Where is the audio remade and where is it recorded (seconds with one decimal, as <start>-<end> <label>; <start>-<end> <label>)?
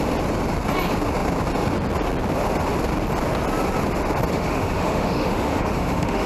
0.0-4.3 recorded; 4.3-6.3 remade